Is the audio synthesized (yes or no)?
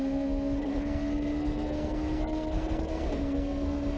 yes